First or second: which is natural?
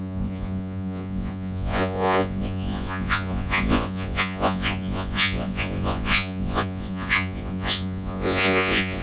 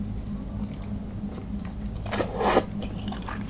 second